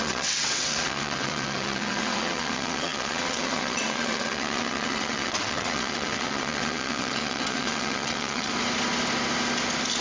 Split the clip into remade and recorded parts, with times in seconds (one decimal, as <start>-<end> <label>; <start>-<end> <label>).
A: 0.0-8.5 remade; 8.5-10.0 recorded